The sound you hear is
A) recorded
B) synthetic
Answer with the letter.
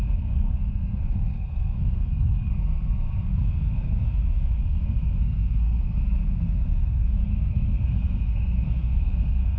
B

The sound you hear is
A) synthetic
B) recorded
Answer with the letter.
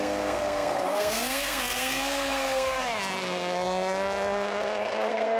A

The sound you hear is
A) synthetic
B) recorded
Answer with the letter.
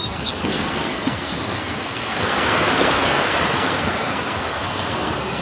A